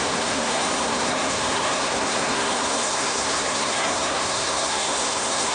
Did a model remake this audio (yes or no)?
yes